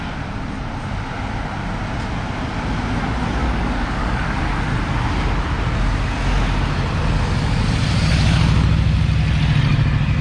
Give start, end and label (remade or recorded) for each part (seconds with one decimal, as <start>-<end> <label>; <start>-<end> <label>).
0.0-3.4 recorded; 3.4-4.4 remade; 4.4-10.2 recorded